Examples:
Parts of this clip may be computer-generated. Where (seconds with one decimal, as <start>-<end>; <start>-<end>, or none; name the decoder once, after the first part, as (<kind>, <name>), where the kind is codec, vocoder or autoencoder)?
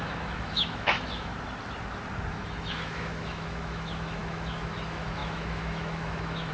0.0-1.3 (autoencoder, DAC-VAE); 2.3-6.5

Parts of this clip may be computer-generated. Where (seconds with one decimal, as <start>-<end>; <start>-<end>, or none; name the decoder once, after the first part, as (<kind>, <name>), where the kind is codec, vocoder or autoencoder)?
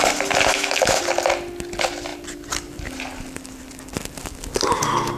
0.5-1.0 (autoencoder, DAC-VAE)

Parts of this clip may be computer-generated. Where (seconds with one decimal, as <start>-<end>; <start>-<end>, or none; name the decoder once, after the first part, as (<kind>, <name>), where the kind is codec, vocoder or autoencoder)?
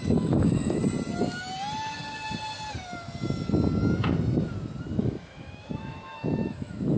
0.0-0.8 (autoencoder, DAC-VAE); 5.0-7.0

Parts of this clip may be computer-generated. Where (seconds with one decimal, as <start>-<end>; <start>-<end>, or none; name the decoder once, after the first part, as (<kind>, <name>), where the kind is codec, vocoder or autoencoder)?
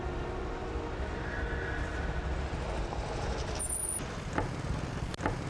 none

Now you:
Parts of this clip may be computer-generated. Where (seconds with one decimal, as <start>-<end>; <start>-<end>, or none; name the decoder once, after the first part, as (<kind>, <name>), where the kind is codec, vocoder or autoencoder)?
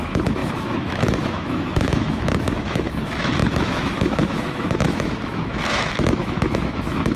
0.0-7.2 (autoencoder, DAC-VAE)